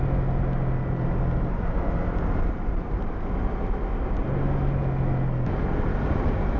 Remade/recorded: recorded